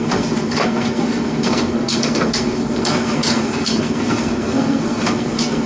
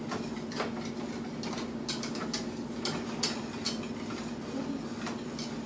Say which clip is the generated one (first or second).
first